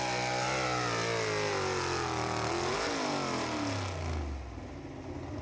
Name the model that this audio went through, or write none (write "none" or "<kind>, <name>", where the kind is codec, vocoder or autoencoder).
none